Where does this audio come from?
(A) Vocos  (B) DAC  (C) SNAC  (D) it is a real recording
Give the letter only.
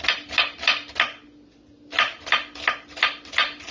D